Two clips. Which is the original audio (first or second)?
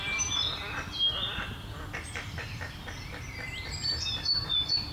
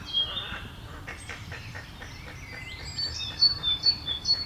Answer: first